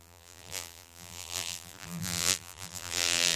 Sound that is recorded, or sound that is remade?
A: remade